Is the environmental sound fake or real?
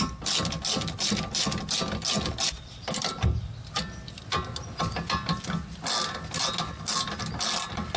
real